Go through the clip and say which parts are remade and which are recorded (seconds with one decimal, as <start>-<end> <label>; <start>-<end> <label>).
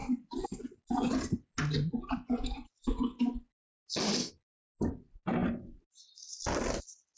0.0-5.4 recorded; 5.4-6.4 remade; 6.4-7.2 recorded